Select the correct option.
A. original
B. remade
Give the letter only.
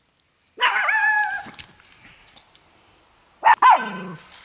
A